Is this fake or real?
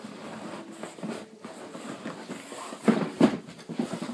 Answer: real